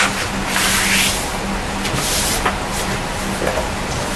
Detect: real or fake real